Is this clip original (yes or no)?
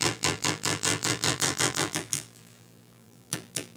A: no